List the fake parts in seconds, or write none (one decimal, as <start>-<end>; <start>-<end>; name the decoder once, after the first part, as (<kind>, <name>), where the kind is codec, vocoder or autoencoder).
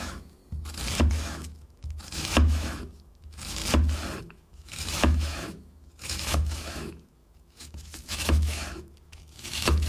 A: 0.0-0.4 (autoencoder, DAC-VAE); 1.1-3.6; 4.2-9.9